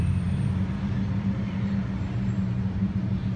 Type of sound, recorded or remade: recorded